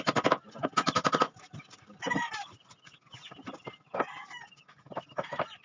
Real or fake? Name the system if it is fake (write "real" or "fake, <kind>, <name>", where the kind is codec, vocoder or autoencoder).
real